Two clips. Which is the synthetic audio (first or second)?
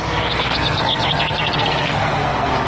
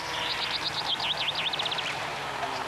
first